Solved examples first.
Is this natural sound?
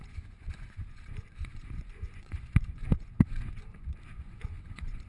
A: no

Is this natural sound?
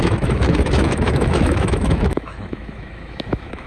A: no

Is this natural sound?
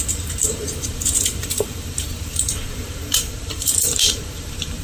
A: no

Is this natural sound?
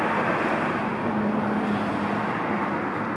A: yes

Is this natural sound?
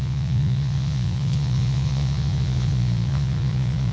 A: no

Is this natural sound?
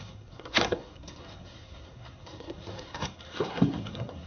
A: no